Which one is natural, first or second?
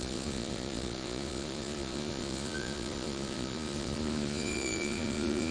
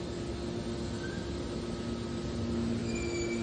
second